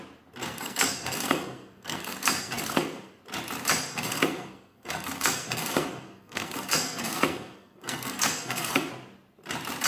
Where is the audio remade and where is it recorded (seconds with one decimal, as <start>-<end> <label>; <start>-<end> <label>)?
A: 0.0-0.4 recorded; 0.4-3.2 remade; 3.2-3.9 recorded; 3.9-8.9 remade; 8.9-9.9 recorded